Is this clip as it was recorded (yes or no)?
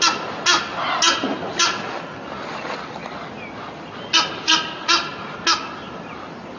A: yes